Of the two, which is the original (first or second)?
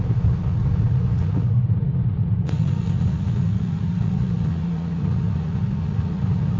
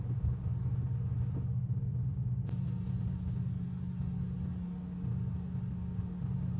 second